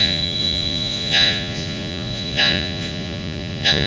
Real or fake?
fake